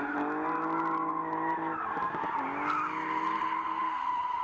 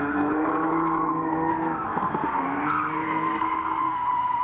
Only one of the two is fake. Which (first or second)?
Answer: second